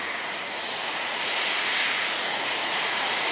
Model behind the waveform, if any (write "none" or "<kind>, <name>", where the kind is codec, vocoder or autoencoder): vocoder, Vocos